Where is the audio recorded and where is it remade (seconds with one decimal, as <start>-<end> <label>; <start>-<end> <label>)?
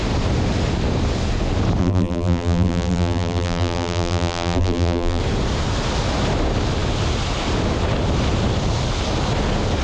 0.0-1.8 recorded; 1.8-5.2 remade; 5.2-9.8 recorded